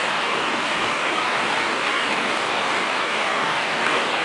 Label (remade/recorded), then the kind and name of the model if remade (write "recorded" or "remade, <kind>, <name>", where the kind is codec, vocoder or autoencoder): remade, codec, DAC